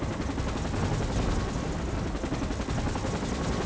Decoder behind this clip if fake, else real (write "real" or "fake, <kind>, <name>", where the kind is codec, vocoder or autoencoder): real